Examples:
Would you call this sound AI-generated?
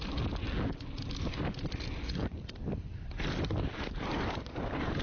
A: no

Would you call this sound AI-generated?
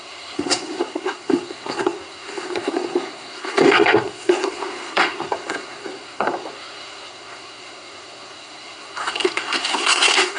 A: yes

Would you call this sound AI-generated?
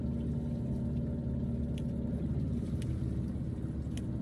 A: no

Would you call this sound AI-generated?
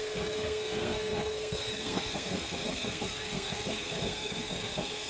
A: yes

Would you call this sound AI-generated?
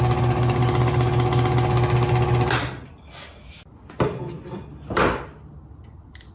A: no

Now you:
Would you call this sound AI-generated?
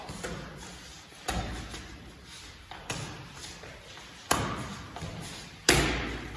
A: no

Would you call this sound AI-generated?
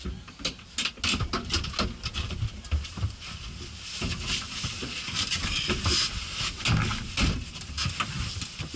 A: no